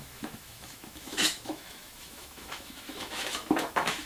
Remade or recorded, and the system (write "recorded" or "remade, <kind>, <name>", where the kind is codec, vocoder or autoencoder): remade, autoencoder, DAC-VAE